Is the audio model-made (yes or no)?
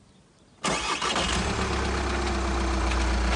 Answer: no